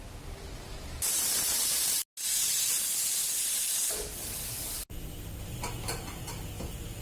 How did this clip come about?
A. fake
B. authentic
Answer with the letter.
B